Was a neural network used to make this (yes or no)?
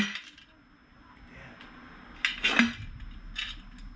no